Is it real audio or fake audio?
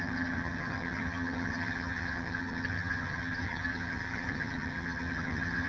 fake